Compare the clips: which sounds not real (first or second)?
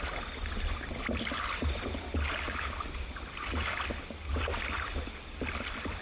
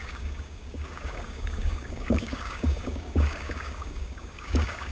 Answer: second